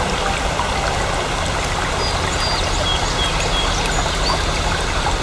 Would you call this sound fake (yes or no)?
no